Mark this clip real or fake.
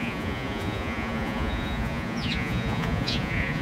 fake